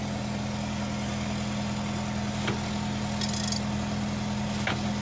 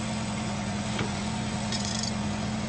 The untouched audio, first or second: first